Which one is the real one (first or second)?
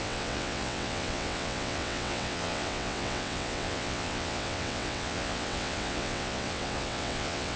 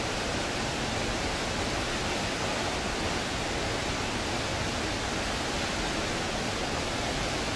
second